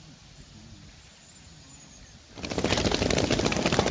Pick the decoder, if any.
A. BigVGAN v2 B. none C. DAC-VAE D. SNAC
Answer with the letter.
B